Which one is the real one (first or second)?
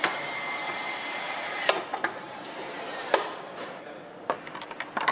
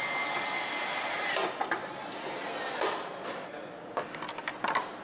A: second